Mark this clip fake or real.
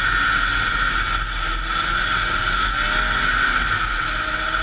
real